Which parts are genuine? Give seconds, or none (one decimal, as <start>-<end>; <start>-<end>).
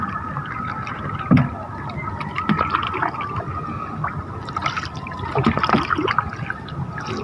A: 0.0-7.2